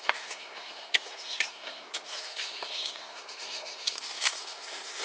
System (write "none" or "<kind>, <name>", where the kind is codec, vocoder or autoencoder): codec, SNAC